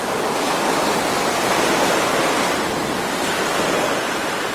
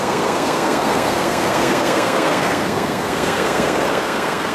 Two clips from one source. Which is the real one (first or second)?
first